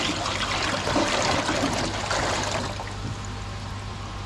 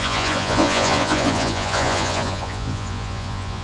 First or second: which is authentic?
first